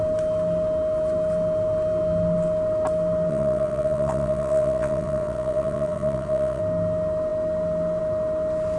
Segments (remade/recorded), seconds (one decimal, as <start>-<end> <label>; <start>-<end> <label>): 0.0-3.3 recorded; 3.3-6.6 remade; 6.6-8.8 recorded